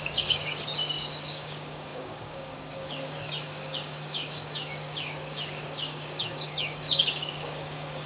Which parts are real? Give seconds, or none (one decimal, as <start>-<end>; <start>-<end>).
none